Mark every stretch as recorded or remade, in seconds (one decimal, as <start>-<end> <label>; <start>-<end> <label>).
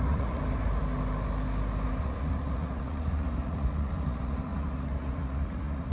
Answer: 0.0-0.4 remade; 0.4-2.0 recorded; 2.0-5.9 remade